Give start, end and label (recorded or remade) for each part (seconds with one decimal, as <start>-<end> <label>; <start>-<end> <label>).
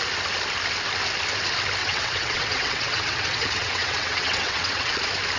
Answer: 0.0-1.8 recorded; 1.8-5.0 remade; 5.0-5.4 recorded